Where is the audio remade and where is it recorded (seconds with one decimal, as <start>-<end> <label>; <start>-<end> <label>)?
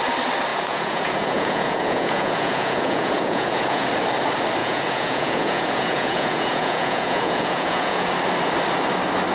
0.0-0.5 recorded; 0.5-3.9 remade; 3.9-4.6 recorded; 4.6-8.1 remade; 8.1-9.3 recorded